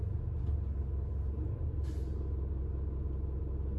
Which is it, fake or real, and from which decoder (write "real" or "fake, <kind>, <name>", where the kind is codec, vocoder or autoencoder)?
real